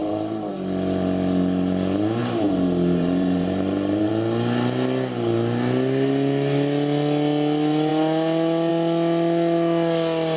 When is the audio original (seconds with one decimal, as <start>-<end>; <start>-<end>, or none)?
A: 0.5-2.2; 4.1-10.4